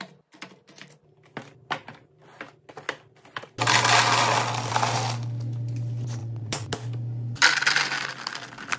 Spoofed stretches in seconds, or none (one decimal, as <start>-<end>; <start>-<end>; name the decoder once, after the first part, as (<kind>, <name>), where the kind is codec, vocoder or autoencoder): 6.2-6.7 (vocoder, Vocos)